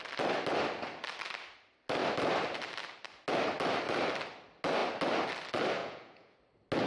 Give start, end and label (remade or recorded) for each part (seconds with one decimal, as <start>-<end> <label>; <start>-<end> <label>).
0.0-5.8 recorded; 5.8-6.4 remade; 6.4-6.9 recorded